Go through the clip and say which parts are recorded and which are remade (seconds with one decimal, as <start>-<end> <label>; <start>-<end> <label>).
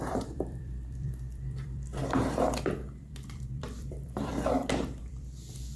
0.0-2.0 remade; 2.0-3.0 recorded; 3.0-4.3 remade; 4.3-5.0 recorded; 5.0-5.8 remade